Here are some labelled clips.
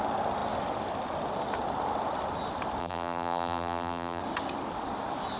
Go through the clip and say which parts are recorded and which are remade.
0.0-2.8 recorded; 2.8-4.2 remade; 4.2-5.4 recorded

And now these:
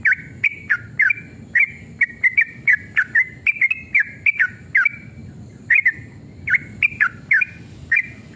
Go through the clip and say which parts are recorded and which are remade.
0.0-8.4 recorded